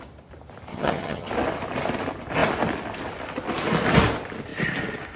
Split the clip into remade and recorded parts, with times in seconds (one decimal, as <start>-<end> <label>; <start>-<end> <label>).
0.0-0.7 recorded; 0.7-1.3 remade; 1.3-5.2 recorded